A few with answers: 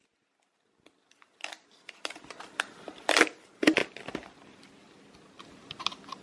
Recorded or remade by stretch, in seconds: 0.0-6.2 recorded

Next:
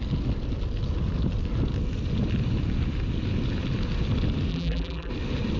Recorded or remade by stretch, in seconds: 0.0-4.5 recorded; 4.5-5.1 remade; 5.1-5.6 recorded

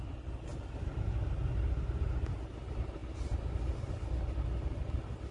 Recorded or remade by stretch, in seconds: 0.0-5.3 recorded

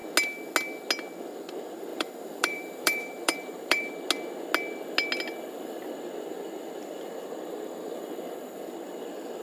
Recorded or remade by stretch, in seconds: 0.0-1.9 recorded; 1.9-3.9 remade; 3.9-9.4 recorded